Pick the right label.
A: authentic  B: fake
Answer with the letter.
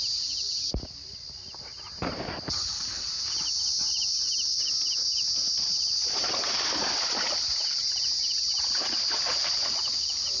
A